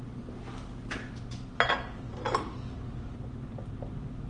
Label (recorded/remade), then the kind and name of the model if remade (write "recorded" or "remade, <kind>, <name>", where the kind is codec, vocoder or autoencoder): recorded